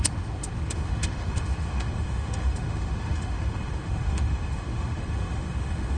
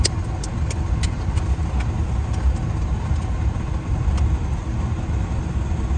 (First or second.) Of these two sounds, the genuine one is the second